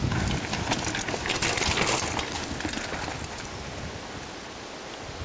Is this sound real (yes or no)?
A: yes